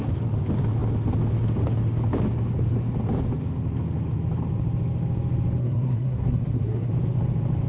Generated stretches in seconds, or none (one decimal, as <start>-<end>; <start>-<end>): 5.6-6.9